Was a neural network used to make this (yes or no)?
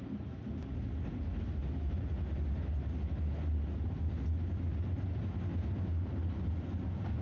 no